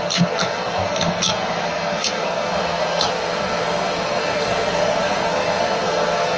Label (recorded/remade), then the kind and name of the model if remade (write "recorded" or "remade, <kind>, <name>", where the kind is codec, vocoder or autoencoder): remade, codec, SNAC